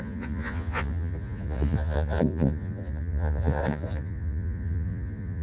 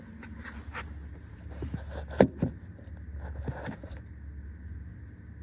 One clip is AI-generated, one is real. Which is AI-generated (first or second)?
first